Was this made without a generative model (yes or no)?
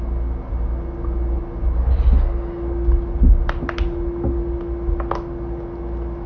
yes